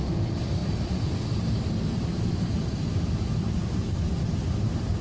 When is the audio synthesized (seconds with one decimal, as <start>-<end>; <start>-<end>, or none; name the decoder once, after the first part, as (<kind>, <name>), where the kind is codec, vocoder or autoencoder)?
none